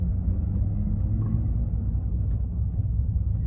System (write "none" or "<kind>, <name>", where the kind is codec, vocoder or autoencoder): none